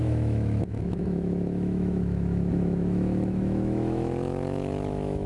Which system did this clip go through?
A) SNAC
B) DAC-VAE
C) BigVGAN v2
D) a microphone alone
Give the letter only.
B